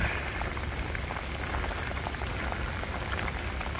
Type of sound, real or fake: real